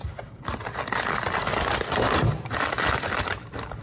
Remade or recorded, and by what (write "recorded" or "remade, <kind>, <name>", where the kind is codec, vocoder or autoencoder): recorded